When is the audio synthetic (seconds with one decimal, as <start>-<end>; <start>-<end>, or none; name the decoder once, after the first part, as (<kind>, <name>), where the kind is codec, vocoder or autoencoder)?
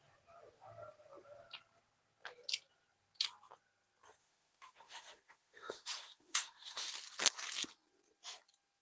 4.2-6.9 (autoencoder, DAC-VAE)